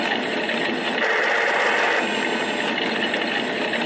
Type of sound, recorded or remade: recorded